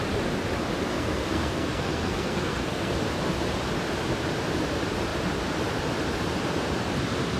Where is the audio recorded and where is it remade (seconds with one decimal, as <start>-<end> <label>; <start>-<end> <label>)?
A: 0.0-0.9 recorded; 0.9-2.9 remade; 2.9-7.4 recorded